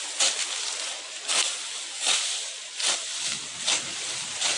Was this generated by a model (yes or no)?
no